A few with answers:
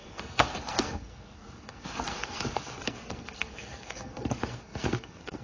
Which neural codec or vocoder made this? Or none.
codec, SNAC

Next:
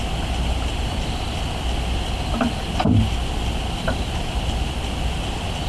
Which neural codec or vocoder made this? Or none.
none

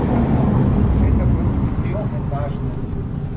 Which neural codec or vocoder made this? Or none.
none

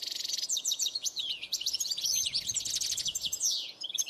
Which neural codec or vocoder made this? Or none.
vocoder, Vocos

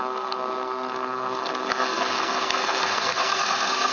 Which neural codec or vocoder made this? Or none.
codec, SNAC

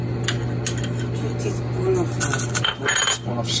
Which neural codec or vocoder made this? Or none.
none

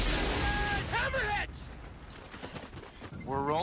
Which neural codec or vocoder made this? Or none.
none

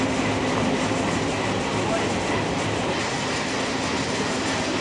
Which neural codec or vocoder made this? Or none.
none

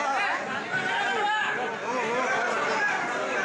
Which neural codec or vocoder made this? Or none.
none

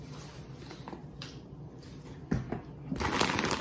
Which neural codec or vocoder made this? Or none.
none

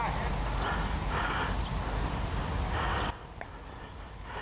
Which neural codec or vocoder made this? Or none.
none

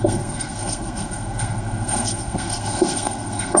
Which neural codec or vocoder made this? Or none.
codec, SNAC